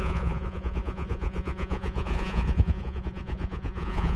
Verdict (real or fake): fake